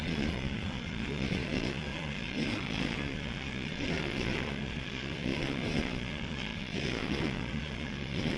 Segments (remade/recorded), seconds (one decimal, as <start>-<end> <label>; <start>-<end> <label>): 0.0-8.4 remade